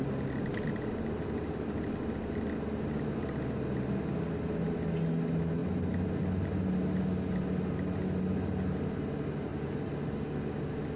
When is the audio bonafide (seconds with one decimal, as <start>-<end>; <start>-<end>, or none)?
0.0-11.0